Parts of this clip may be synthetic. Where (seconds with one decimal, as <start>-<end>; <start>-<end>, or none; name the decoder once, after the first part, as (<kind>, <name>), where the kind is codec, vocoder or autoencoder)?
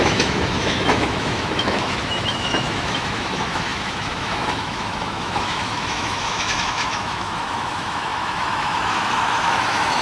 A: 0.0-10.0 (autoencoder, DAC-VAE)